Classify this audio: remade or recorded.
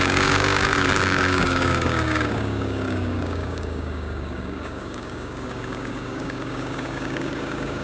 remade